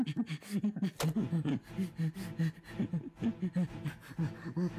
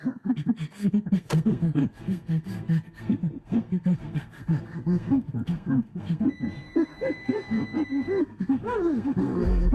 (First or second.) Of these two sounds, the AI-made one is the second